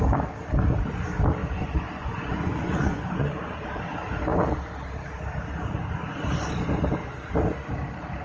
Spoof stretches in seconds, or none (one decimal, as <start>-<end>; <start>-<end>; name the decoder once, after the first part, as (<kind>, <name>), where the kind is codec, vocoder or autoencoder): 1.4-3.6 (vocoder, Vocos)